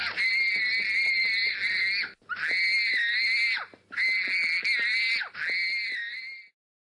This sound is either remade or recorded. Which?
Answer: recorded